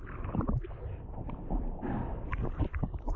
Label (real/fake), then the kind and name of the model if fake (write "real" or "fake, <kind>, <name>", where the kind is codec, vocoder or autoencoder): real